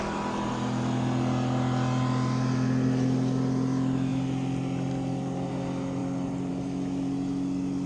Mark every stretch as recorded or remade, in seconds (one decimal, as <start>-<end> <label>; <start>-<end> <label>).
0.0-7.9 recorded